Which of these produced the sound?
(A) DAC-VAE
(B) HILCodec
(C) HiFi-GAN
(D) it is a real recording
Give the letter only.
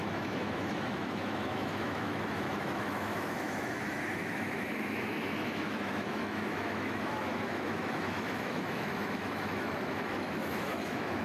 A